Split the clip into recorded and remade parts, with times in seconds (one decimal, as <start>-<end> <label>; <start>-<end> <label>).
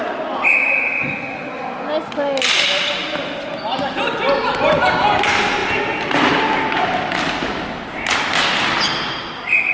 0.0-9.7 recorded